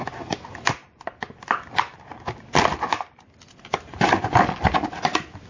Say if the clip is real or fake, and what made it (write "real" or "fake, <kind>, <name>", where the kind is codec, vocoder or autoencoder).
real